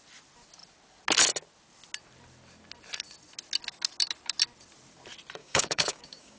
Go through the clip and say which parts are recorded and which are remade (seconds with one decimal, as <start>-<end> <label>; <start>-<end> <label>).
0.0-5.4 recorded; 5.4-6.4 remade